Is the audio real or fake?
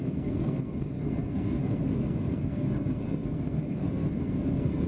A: fake